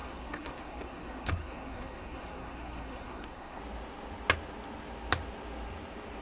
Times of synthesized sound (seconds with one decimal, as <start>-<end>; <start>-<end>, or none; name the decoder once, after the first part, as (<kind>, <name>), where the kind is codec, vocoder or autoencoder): 0.0-3.6 (codec, SNAC)